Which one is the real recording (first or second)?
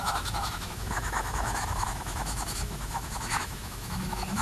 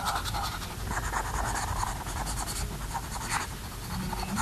second